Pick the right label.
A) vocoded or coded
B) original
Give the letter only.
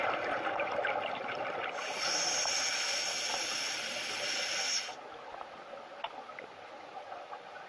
B